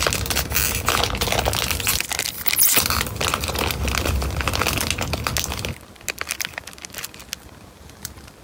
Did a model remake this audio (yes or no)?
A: no